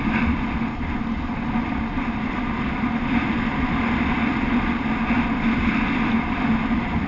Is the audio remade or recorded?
recorded